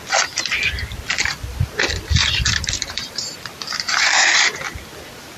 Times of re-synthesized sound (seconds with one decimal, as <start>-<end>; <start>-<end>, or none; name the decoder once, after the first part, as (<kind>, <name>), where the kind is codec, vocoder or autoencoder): 2.2-4.6 (vocoder, BigVGAN v2)